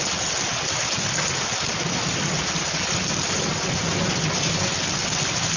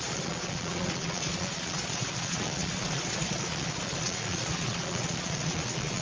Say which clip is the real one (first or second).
first